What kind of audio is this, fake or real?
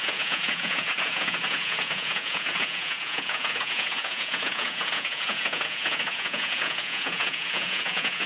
fake